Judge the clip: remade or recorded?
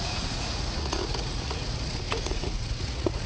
remade